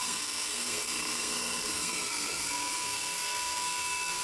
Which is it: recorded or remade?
remade